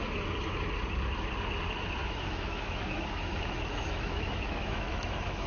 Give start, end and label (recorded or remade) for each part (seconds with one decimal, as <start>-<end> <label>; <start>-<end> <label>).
0.0-2.0 recorded; 2.0-5.5 remade